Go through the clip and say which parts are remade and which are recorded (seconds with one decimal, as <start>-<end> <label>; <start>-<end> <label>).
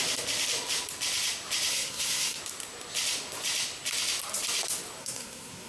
0.0-1.7 recorded; 1.7-2.4 remade; 2.4-5.0 recorded; 5.0-5.7 remade